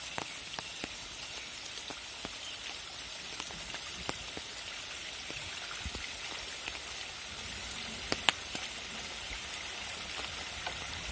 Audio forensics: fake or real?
real